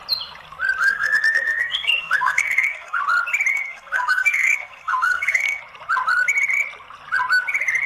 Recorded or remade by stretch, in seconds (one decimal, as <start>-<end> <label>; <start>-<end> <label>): 0.0-0.8 recorded; 0.8-3.0 remade; 3.0-3.5 recorded; 3.5-5.6 remade; 5.6-7.9 recorded